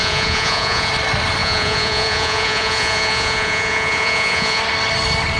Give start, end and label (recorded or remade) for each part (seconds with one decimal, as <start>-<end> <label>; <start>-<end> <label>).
0.0-0.9 remade; 0.9-1.4 recorded; 1.4-4.6 remade; 4.6-5.4 recorded